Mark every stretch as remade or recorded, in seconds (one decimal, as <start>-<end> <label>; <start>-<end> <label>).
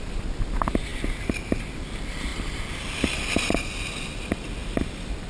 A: 0.0-5.3 recorded